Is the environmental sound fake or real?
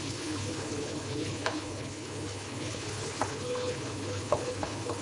fake